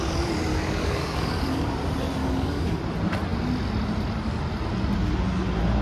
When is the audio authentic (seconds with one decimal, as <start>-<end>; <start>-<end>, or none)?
0.0-0.5; 1.7-2.2; 2.8-5.8